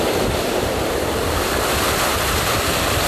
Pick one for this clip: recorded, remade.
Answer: recorded